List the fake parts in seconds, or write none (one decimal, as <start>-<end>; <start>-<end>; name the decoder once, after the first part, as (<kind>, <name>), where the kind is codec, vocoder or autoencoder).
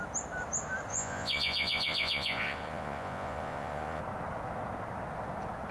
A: 0.9-4.0 (vocoder, Vocos)